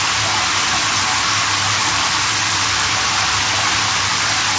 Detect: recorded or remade recorded